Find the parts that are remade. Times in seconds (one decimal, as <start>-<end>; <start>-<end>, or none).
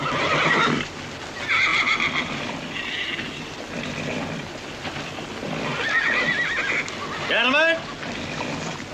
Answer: 1.7-6.3